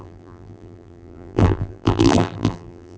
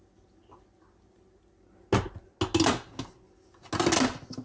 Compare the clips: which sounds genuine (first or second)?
second